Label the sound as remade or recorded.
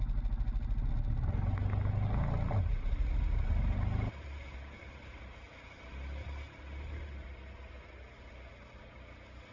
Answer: recorded